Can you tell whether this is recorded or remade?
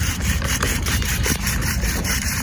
remade